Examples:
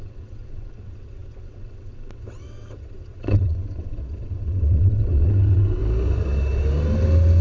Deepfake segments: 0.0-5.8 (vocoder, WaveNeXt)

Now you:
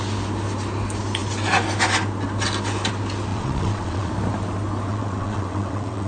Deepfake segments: 3.3-4.1 (vocoder, WaveNeXt); 4.9-6.1

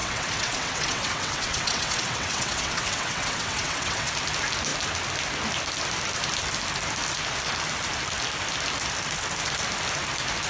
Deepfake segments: 0.0-4.1 (vocoder, WaveNeXt)

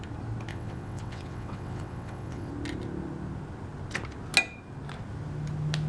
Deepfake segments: 0.5-2.5 (vocoder, WaveNeXt)

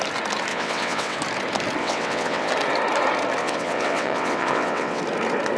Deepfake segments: 0.5-1.2 (vocoder, WaveNeXt); 1.8-2.5; 3.4-5.0

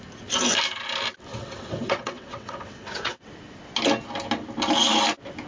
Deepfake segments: 1.3-3.3 (vocoder, WaveNeXt)

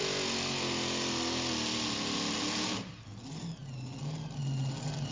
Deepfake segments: none